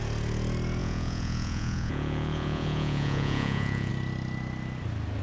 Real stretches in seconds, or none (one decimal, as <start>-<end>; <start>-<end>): 0.0-0.8; 3.9-5.2